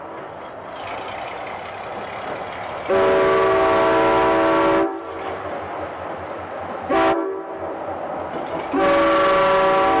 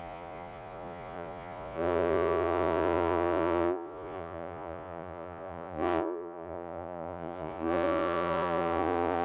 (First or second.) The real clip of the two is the first